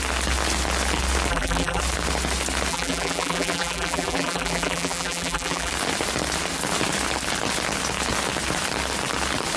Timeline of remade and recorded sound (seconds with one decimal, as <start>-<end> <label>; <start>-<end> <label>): 0.0-1.3 recorded; 1.3-1.8 remade; 1.8-2.7 recorded; 2.7-5.7 remade; 5.7-9.6 recorded